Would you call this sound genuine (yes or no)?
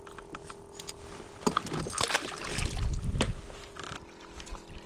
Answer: yes